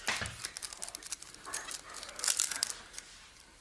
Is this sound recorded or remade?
recorded